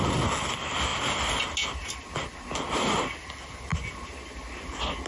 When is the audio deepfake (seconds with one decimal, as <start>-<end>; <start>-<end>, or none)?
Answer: none